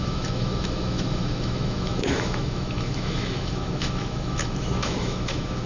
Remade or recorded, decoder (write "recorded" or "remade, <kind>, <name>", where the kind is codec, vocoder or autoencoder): remade, autoencoder, DAC-VAE